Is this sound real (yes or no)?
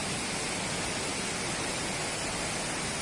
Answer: yes